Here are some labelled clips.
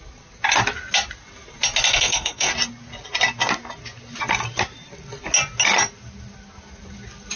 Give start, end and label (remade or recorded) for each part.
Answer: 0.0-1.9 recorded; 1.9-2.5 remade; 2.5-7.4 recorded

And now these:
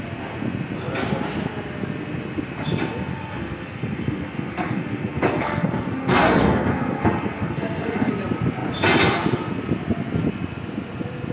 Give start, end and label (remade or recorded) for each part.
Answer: 0.0-3.1 recorded; 3.1-8.1 remade; 8.1-11.3 recorded